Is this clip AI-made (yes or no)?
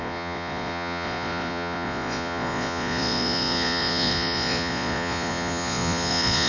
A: yes